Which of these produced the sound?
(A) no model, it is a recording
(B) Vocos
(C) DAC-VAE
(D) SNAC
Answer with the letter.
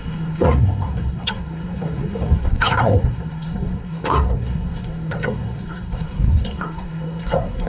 D